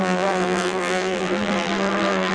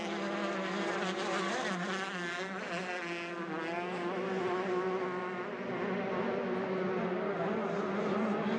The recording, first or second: second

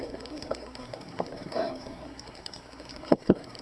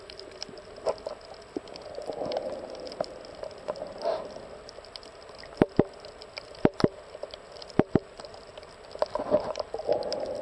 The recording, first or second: second